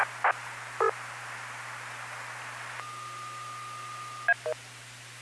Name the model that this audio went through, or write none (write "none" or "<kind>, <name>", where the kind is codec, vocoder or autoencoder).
none